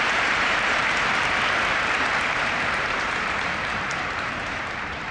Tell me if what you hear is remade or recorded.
remade